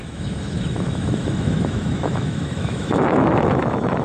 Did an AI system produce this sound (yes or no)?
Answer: yes